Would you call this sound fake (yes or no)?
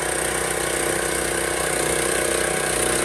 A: no